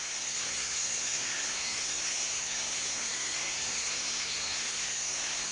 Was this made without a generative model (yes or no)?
no